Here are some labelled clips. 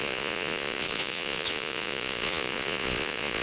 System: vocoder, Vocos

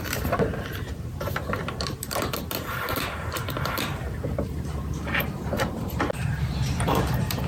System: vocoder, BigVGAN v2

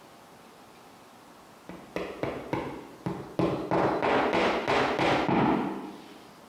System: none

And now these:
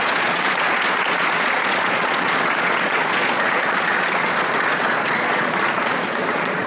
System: vocoder, Vocos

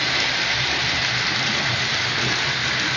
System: none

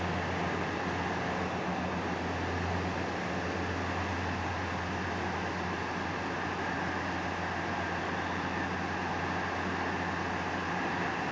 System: none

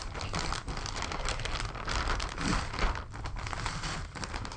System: none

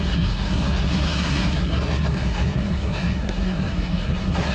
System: codec, SNAC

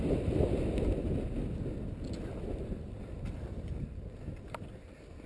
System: none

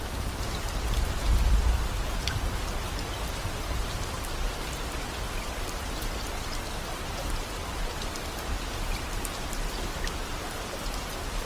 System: none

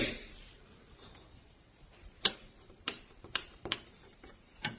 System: vocoder, BigVGAN v2